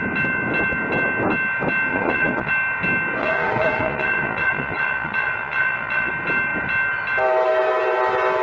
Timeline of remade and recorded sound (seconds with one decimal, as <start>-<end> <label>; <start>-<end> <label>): 0.0-1.9 recorded; 1.9-2.5 remade; 2.5-3.2 recorded; 3.2-6.1 remade; 6.1-8.4 recorded